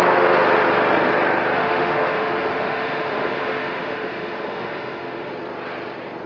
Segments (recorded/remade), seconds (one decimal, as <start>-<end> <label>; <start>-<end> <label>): 0.0-1.6 recorded; 1.6-5.3 remade; 5.3-6.3 recorded